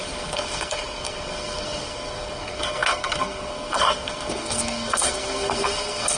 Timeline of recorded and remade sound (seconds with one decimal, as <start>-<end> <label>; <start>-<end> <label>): 0.0-6.2 remade